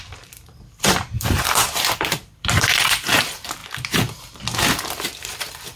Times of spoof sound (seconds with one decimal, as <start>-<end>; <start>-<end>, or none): 0.0-3.6